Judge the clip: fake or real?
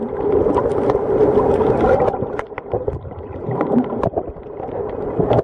real